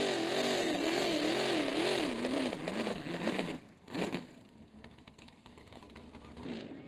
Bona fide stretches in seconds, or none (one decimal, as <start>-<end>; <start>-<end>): 0.0-0.6; 1.2-2.9; 6.0-6.9

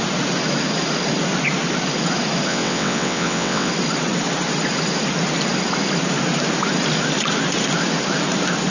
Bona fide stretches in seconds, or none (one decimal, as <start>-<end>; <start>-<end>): 0.0-2.5; 3.7-8.7